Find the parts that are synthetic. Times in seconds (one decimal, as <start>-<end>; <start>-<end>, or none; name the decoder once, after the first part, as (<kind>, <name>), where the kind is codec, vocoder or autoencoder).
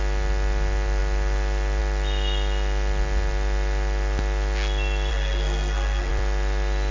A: 5.1-6.1 (codec, SNAC)